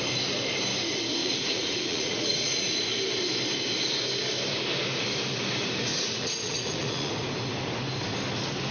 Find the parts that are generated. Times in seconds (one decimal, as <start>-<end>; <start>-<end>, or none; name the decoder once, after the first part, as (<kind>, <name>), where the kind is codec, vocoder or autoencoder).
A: 1.2-2.8 (vocoder, Vocos); 5.9-7.1